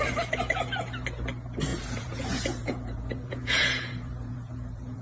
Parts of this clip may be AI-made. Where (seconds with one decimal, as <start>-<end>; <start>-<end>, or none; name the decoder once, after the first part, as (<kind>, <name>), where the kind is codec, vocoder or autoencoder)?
1.7-5.0 (vocoder, Vocos)